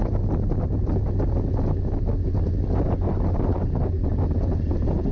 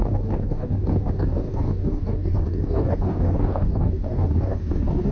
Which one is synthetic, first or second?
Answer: second